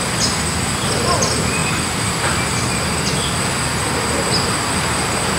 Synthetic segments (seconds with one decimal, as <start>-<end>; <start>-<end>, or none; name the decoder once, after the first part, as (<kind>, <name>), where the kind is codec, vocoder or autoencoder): none